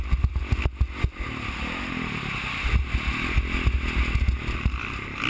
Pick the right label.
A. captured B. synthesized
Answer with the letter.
A